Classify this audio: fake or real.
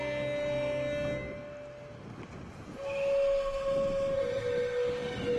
real